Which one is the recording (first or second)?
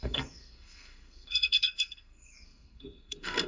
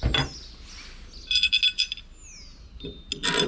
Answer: second